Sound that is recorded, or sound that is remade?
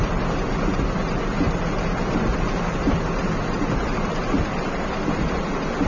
recorded